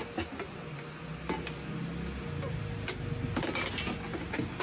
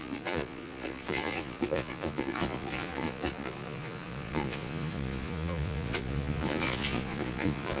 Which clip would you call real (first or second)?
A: first